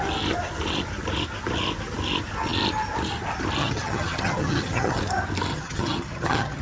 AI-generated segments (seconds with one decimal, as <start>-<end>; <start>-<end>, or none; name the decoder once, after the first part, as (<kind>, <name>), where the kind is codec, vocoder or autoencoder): 3.6-5.0 (vocoder, HiFi-GAN); 5.5-6.6